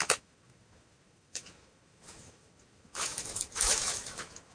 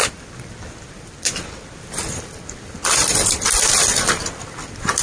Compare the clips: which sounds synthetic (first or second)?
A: first